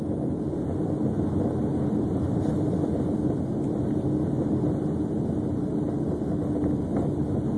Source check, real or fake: real